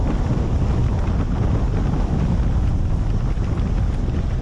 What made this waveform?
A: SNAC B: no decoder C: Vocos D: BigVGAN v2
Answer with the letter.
B